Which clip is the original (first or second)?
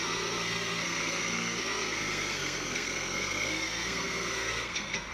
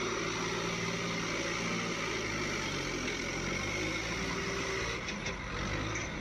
second